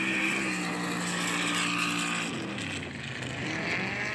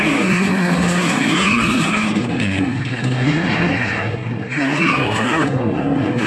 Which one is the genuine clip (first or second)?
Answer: first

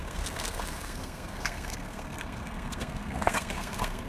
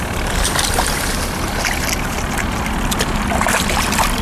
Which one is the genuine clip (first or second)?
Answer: second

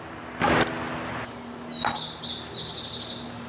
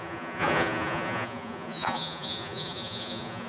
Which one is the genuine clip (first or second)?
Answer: first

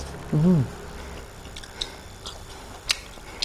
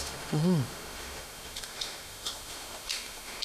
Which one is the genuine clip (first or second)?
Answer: first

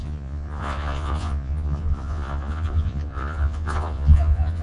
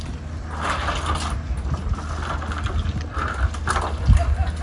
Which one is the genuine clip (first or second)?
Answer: second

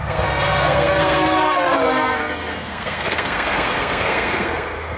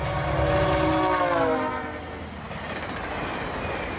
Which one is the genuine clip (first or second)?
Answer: second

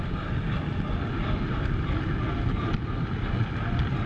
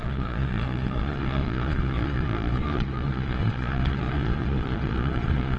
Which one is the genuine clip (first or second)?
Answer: first